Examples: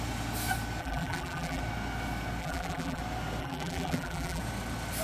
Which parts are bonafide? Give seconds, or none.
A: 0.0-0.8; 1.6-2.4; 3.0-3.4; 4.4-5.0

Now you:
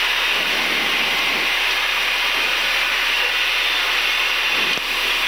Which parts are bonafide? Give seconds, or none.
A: 0.0-5.3

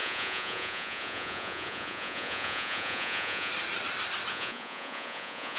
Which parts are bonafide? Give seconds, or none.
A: 3.5-4.3

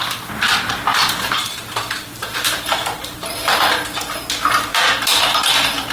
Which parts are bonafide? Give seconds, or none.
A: 0.0-0.9; 1.6-2.2; 3.4-5.9

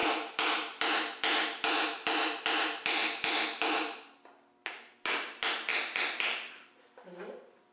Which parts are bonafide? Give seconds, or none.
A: 0.0-5.7; 7.0-7.7